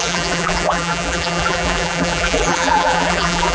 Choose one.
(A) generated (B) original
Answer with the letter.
A